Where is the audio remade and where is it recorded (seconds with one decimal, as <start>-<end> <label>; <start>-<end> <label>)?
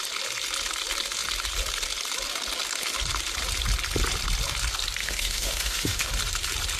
0.0-5.0 recorded; 5.0-6.1 remade; 6.1-6.8 recorded